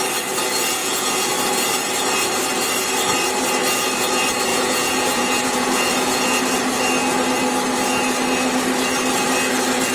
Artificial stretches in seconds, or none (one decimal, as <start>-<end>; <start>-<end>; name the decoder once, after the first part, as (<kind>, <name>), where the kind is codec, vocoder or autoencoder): 0.8-1.3 (vocoder, Vocos); 4.5-6.4